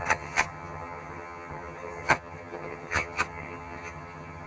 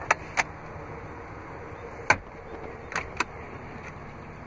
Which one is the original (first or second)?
second